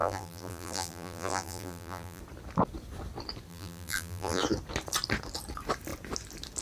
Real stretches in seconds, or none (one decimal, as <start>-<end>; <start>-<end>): 2.2-3.5; 4.4-6.6